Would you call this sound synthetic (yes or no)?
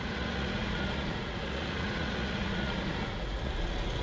yes